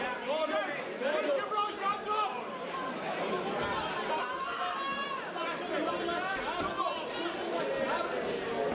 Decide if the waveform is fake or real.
real